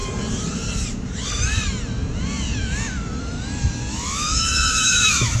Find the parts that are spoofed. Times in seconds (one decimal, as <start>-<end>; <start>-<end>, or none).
3.9-5.4